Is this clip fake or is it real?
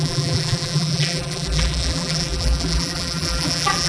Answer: fake